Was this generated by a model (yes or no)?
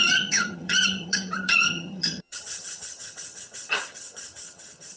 yes